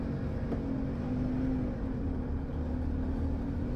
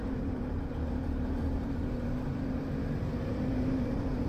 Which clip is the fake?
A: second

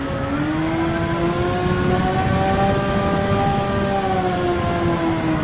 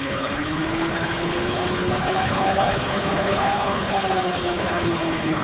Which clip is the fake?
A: second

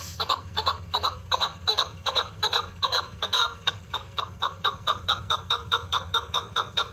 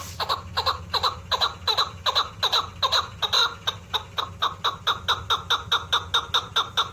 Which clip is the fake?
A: first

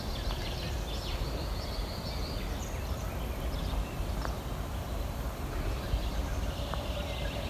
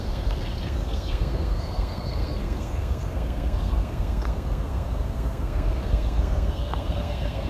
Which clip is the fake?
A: second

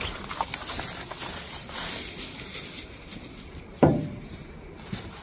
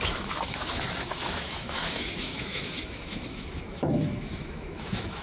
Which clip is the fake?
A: second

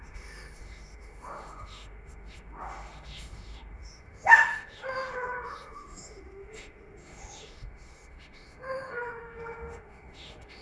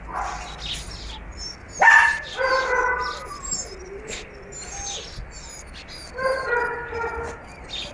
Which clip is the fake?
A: first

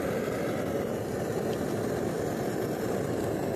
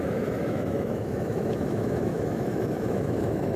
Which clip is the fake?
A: second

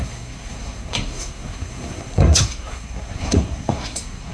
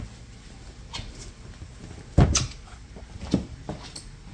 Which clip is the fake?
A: first